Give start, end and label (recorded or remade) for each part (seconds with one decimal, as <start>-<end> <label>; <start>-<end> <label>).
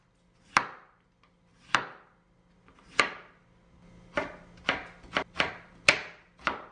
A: 0.0-6.7 recorded